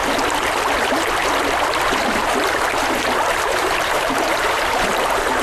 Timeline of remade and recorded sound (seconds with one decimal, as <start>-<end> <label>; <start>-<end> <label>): 0.0-3.2 recorded; 3.2-5.4 remade